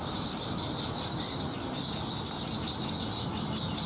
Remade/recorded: recorded